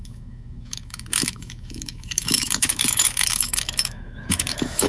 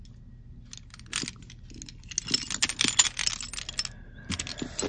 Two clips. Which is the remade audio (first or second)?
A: first